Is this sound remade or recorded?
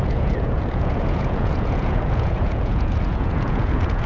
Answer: remade